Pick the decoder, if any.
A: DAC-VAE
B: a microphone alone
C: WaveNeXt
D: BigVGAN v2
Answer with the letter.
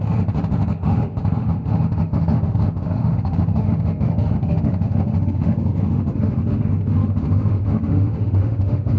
A